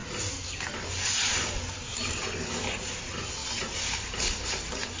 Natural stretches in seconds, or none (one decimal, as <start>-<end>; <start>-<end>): 0.0-5.0